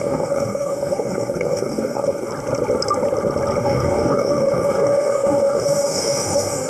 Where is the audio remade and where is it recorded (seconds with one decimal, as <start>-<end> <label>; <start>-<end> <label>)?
0.0-2.3 remade; 2.3-3.6 recorded; 3.6-6.7 remade